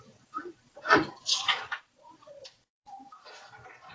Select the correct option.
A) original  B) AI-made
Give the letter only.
B